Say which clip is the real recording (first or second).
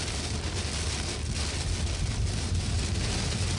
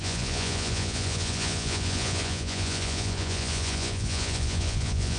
first